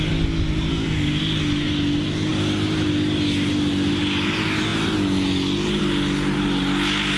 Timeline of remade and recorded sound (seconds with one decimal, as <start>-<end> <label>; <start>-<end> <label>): 0.0-0.7 recorded; 0.7-1.2 remade; 1.2-7.2 recorded